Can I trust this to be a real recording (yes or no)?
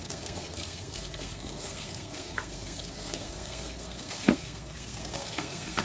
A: no